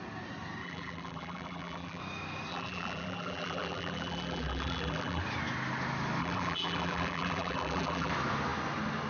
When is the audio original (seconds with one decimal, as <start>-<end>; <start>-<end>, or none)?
0.0-0.6; 2.0-2.5; 5.2-6.2; 8.1-9.1